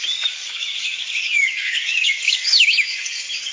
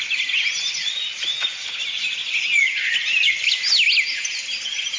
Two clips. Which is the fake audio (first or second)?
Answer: first